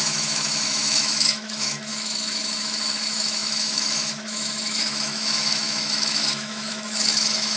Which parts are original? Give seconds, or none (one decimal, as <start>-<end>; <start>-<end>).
none